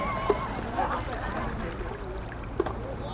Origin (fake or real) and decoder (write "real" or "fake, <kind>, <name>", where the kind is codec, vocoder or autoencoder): real